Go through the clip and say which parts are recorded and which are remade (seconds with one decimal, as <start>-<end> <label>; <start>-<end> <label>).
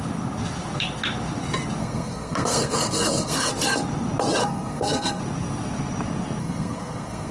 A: 0.0-1.8 recorded; 1.8-3.5 remade; 3.5-4.4 recorded; 4.4-5.2 remade; 5.2-6.4 recorded; 6.4-7.3 remade